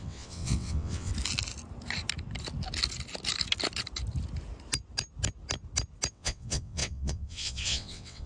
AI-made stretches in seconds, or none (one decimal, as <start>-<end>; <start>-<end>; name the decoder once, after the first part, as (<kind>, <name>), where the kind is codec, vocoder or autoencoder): 0.0-1.1 (vocoder, WaveNeXt); 6.1-8.3